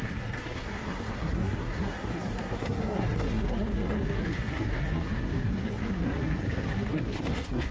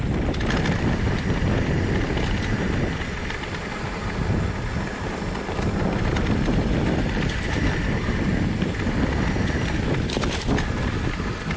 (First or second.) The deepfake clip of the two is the first